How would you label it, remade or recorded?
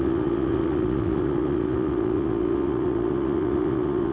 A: remade